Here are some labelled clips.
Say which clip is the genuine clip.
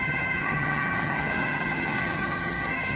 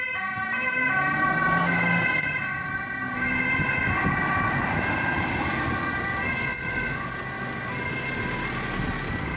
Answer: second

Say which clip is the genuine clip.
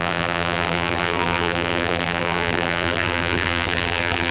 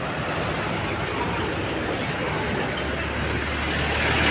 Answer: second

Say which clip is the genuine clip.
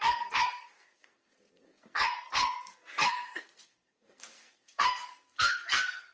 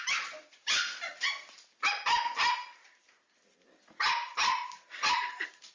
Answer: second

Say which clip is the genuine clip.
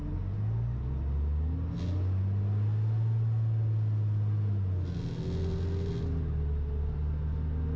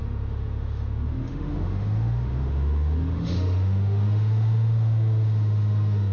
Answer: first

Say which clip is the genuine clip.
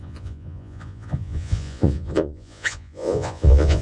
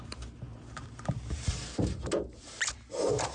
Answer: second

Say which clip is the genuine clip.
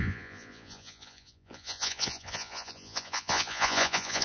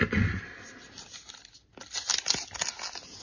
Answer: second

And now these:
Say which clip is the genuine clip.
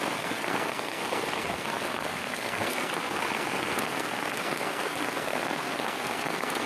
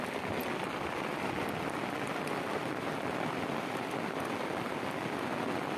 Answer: second